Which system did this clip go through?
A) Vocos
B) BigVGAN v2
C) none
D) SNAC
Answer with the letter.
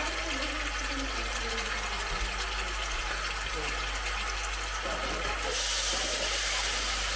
C